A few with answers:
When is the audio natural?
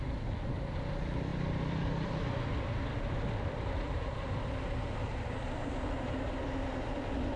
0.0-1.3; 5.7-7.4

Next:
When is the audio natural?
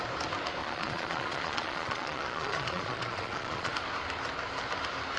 0.0-0.6; 3.7-5.2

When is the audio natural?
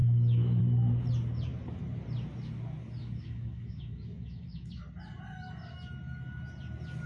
0.6-3.0; 4.8-7.1